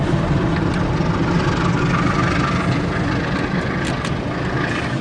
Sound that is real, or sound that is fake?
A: real